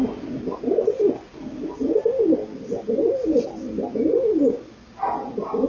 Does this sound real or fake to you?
real